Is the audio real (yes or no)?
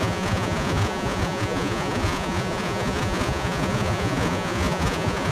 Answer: no